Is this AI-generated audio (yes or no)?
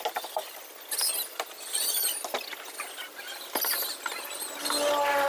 no